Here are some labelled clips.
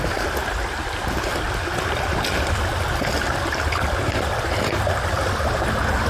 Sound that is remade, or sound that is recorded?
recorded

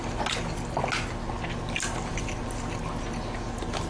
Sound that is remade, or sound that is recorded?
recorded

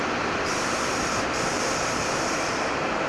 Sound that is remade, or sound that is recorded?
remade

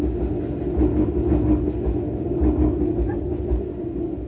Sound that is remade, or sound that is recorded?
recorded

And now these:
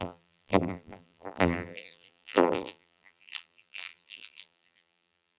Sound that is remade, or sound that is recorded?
remade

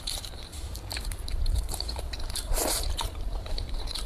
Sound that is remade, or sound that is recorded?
remade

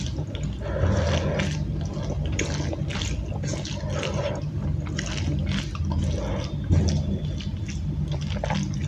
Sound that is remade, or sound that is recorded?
recorded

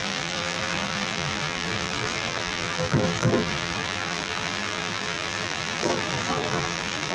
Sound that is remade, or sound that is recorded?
remade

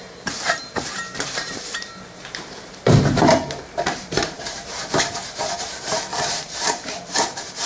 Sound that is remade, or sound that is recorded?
remade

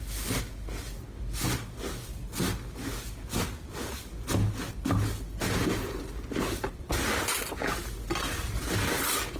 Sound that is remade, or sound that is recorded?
recorded